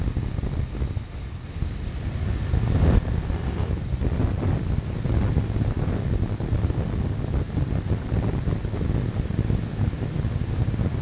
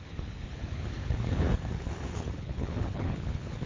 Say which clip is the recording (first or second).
first